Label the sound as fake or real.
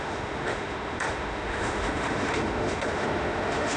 fake